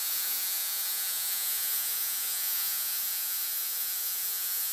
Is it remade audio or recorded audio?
remade